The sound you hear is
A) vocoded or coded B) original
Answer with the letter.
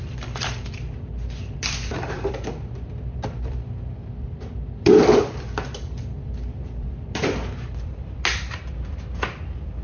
A